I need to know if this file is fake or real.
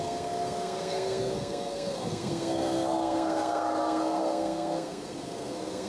fake